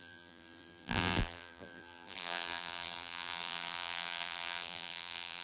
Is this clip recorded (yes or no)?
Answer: no